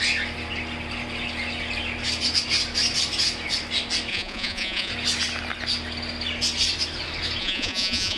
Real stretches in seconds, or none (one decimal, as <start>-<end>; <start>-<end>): 0.0-4.1; 4.9-7.4